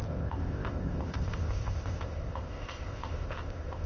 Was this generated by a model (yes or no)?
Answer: yes